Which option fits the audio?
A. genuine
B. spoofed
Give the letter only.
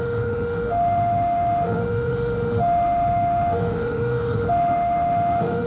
B